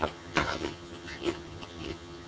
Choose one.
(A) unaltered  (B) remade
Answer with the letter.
B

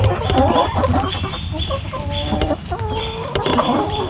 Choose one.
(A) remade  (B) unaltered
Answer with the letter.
B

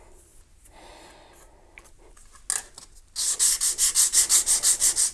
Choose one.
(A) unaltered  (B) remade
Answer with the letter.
A